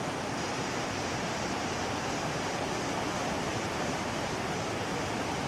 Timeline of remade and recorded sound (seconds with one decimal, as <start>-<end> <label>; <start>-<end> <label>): 0.0-0.5 recorded; 0.5-1.8 remade; 1.8-3.5 recorded; 3.5-4.1 remade; 4.1-5.5 recorded